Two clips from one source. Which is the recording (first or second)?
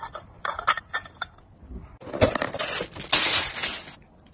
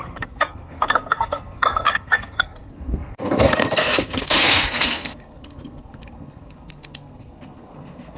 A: first